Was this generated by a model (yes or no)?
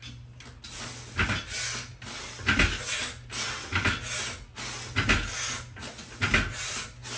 no